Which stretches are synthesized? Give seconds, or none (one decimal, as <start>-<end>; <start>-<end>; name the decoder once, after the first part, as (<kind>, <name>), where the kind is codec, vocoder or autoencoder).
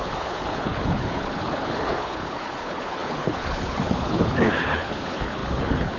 0.0-6.0 (codec, HILCodec)